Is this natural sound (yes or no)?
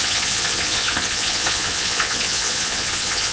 no